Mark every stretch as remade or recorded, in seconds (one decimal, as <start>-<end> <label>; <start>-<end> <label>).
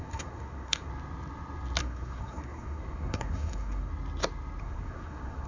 0.0-0.9 remade; 0.9-1.8 recorded; 1.8-3.9 remade; 3.9-4.6 recorded; 4.6-5.5 remade